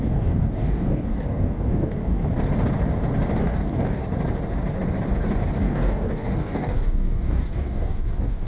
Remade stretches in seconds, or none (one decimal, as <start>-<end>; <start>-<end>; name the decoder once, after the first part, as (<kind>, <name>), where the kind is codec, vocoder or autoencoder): 0.0-2.2 (codec, DAC); 3.4-4.0; 5.6-8.5